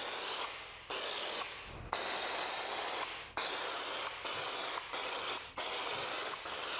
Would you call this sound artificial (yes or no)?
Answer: no